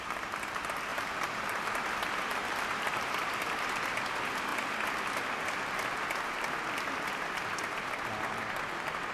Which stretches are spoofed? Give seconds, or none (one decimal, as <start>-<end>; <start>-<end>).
0.9-1.6; 2.3-3.2